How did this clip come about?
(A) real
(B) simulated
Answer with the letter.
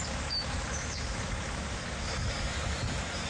B